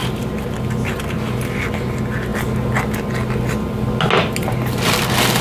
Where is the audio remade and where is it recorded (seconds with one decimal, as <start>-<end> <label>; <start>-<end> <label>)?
0.0-5.4 recorded